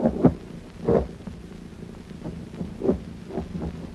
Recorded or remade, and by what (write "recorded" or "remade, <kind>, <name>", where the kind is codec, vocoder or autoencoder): recorded